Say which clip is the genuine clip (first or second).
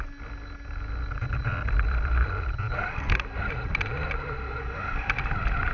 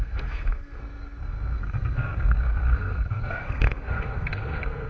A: first